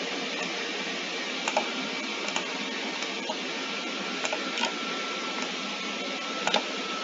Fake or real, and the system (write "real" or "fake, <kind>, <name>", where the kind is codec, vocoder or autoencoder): real